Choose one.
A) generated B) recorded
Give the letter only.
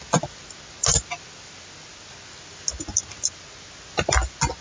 B